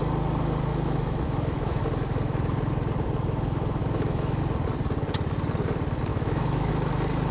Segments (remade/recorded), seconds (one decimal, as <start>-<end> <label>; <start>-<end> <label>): 0.0-0.7 recorded; 0.7-1.8 remade; 1.8-3.8 recorded; 3.8-4.4 remade; 4.4-6.1 recorded; 6.1-6.7 remade; 6.7-7.3 recorded